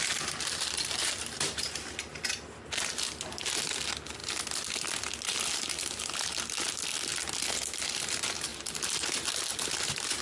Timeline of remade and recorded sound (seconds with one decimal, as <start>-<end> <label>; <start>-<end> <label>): 0.0-9.5 recorded; 9.5-10.2 remade